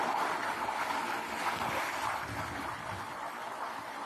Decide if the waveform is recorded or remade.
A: recorded